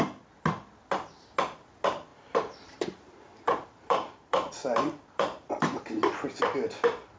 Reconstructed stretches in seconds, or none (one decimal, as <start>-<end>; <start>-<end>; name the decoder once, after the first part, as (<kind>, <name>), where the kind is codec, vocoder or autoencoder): 2.1-6.4 (vocoder, BigVGAN v2)